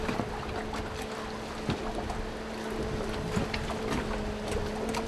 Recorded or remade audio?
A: recorded